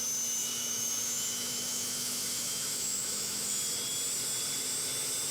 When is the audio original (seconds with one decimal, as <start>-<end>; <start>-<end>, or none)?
0.0-0.4; 3.6-5.3